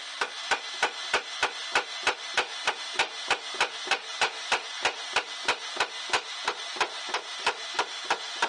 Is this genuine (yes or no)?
yes